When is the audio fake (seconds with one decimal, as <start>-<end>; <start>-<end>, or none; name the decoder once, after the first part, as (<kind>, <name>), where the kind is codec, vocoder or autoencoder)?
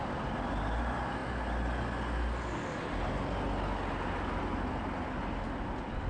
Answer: none